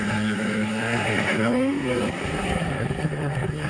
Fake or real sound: fake